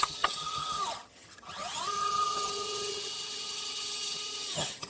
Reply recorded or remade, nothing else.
remade